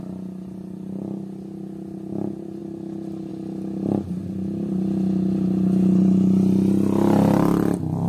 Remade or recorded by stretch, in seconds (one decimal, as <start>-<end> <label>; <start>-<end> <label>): 0.0-8.1 recorded